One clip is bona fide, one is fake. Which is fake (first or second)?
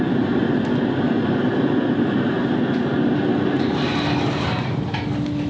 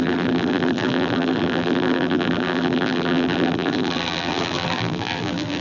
second